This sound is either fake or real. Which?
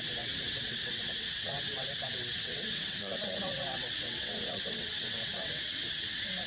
fake